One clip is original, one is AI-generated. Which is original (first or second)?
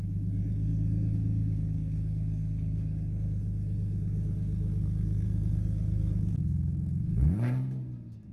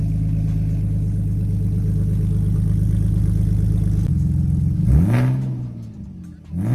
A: second